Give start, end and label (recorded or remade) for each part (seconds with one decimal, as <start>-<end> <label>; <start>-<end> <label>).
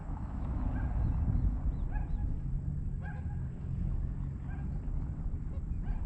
0.0-0.6 remade; 0.6-6.1 recorded